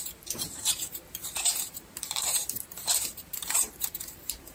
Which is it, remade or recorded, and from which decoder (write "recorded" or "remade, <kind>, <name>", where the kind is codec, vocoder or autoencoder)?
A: remade, vocoder, BigVGAN v2